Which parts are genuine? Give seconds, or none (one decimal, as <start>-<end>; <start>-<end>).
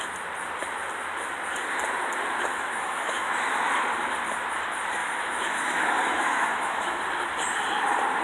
0.0-2.5; 3.7-5.0; 7.0-8.2